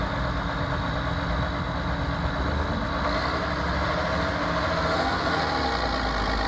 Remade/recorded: recorded